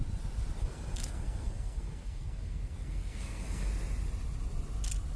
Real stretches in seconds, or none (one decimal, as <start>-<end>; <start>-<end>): 0.0-0.6; 3.7-5.2